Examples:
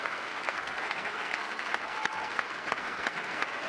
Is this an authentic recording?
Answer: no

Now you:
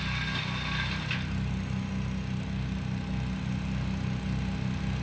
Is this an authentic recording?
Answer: yes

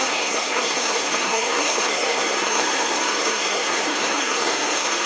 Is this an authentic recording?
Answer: no